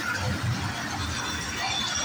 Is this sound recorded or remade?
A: recorded